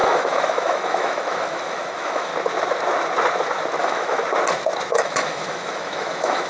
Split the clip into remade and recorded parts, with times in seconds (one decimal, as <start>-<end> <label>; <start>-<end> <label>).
0.0-2.3 remade; 2.3-3.8 recorded; 3.8-4.2 remade; 4.2-4.9 recorded; 4.9-6.5 remade